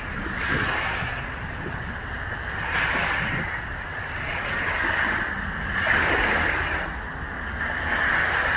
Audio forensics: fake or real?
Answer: real